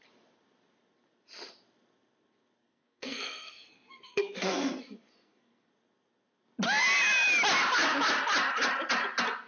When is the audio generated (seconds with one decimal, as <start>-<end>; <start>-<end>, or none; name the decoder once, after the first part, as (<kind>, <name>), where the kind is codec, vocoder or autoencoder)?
2.6-5.7 (codec, SNAC)